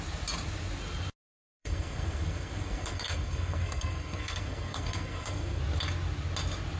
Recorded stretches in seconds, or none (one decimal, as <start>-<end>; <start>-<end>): 0.0-1.5; 5.6-6.8